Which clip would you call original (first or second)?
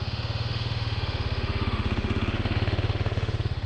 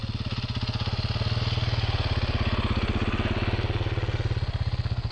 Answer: second